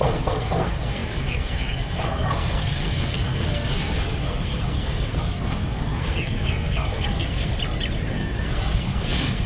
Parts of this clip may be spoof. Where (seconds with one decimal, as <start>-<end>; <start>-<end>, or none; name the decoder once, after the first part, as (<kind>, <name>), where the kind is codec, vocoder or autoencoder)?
0.0-7.5 (codec, SNAC); 8.1-9.5